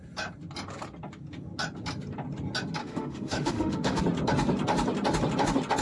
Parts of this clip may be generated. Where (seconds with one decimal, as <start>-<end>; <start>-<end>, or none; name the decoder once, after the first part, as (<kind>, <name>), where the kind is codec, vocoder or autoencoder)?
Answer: 2.8-4.0 (autoencoder, DAC-VAE)